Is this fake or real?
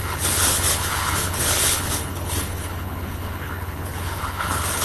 fake